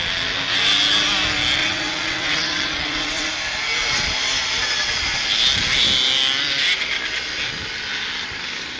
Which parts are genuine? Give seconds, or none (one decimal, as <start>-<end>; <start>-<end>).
0.0-1.6; 3.3-8.8